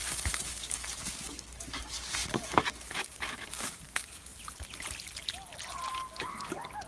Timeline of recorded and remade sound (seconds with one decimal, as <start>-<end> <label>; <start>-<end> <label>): 0.0-4.3 remade; 4.3-5.9 recorded; 5.9-6.9 remade